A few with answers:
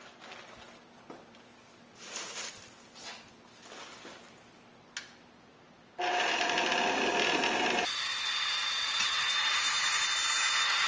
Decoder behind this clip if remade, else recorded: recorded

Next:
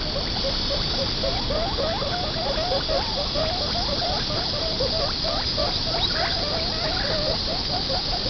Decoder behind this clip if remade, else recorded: recorded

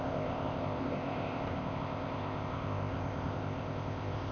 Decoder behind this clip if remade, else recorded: remade, codec, ZipCodec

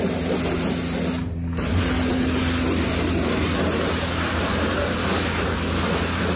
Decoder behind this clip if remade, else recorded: recorded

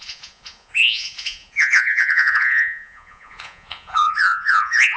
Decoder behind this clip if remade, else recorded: remade, vocoder, Vocos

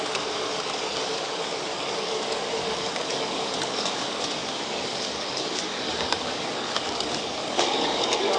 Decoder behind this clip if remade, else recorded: remade, codec, DAC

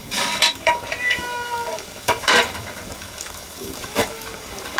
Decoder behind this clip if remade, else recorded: remade, codec, DAC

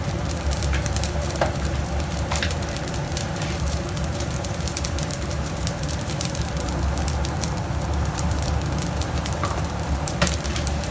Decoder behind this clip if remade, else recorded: remade, vocoder, BigVGAN v2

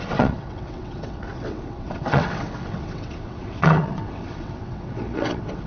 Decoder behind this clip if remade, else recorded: remade, vocoder, WaveNeXt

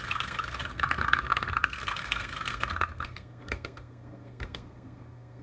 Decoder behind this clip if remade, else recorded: remade, codec, SNAC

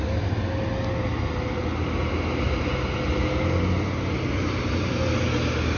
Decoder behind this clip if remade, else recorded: recorded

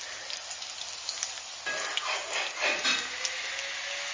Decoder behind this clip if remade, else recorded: recorded